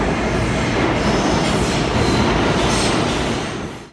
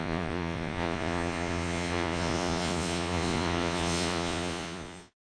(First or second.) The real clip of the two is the first